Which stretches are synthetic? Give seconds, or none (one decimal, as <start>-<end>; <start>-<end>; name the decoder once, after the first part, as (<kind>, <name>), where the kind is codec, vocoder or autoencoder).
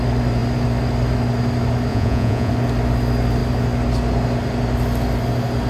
1.9-2.5 (vocoder, Vocos)